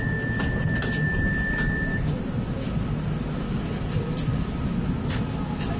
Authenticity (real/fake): real